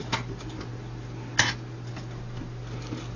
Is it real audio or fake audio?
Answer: real